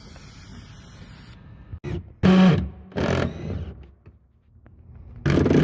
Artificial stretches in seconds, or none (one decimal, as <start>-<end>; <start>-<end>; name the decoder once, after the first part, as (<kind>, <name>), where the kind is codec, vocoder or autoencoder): none